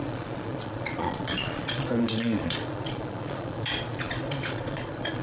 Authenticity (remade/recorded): remade